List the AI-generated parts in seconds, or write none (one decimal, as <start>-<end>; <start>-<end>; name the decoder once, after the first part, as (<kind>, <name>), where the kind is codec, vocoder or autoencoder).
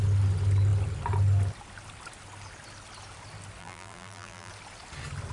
3.6-4.5 (vocoder, BigVGAN v2)